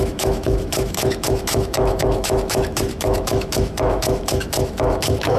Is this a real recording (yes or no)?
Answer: no